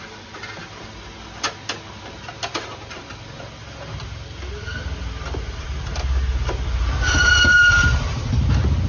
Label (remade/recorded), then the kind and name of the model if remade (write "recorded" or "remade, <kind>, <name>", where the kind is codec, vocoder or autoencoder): recorded